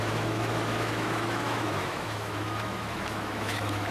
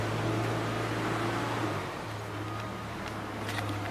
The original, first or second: second